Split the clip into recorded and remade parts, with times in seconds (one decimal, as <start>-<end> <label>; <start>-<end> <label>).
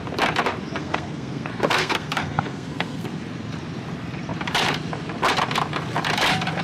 0.0-0.8 recorded; 0.8-3.2 remade; 3.2-6.6 recorded